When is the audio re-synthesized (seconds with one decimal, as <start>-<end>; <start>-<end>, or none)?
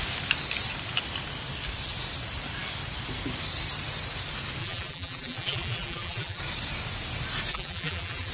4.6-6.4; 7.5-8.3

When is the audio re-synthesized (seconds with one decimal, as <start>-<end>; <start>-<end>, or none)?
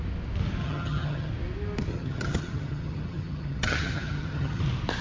0.6-1.3; 1.9-4.6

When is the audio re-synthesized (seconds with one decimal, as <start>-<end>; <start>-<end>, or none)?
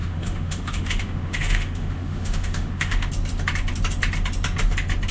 0.0-3.1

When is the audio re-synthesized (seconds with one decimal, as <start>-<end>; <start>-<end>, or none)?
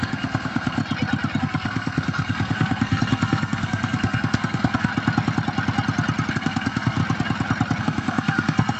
0.0-0.8; 1.4-4.9; 6.3-7.0; 7.8-8.8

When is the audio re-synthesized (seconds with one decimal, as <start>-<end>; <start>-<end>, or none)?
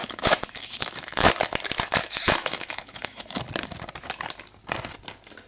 0.0-1.3; 2.0-3.4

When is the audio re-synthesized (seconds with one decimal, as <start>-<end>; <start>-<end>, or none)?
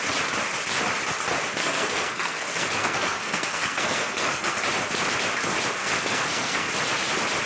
1.6-4.6; 5.8-6.7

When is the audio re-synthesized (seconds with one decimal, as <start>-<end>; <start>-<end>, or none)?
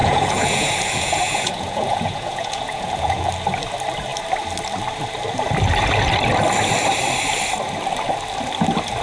0.0-3.3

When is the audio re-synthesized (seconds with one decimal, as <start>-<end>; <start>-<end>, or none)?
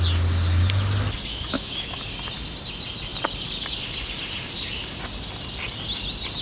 1.3-2.0